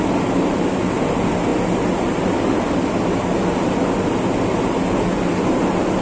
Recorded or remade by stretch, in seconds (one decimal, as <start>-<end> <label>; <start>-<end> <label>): 0.0-6.0 recorded